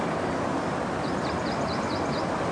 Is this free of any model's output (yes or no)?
no